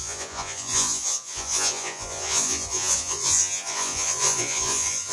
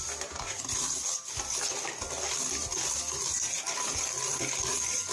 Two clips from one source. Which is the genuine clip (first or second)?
second